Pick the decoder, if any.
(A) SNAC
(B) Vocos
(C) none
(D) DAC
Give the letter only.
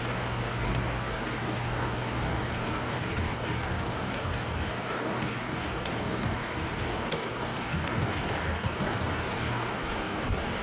D